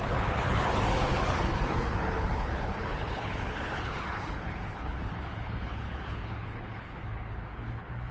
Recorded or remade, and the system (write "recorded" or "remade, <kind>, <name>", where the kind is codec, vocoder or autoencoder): remade, codec, HILCodec